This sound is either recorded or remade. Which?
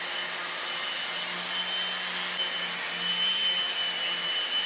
recorded